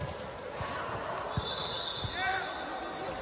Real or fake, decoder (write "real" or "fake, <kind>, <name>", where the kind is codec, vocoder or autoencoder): real